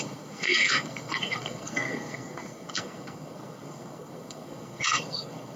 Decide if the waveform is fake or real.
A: fake